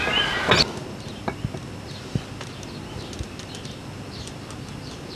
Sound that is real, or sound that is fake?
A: real